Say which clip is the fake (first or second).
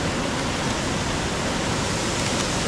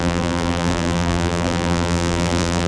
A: second